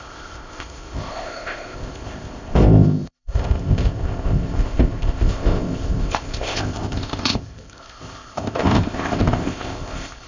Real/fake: fake